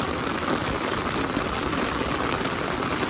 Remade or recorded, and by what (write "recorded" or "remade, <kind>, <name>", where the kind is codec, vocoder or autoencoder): recorded